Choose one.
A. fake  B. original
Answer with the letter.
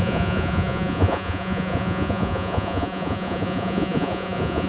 A